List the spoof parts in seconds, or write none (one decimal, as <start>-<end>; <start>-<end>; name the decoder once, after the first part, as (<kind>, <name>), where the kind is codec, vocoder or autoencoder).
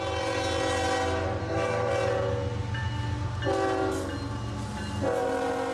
1.4-1.9 (codec, SNAC)